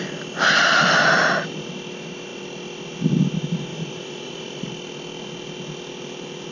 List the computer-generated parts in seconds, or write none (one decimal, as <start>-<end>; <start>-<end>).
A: 3.7-4.7